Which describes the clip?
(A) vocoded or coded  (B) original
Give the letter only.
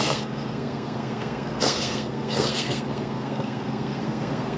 A